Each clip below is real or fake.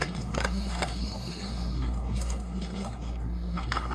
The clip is fake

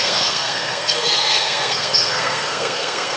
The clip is fake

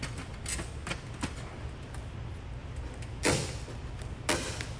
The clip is real